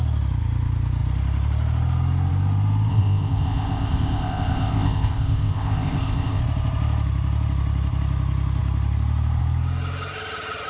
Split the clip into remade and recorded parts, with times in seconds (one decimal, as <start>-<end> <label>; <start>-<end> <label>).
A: 0.0-2.9 recorded; 2.9-6.4 remade; 6.4-10.7 recorded